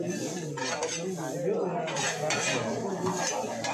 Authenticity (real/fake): real